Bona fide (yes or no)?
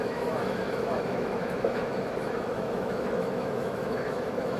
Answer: no